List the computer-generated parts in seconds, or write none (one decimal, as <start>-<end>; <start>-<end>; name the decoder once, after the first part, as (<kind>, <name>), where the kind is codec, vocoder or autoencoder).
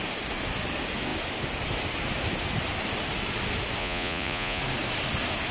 3.8-4.6 (vocoder, Vocos)